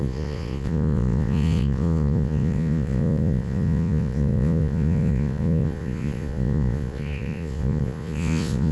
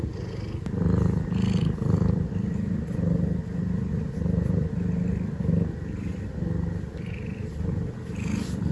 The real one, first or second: second